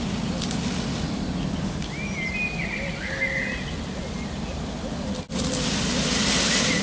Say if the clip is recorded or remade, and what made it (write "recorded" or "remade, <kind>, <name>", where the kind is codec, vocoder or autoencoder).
recorded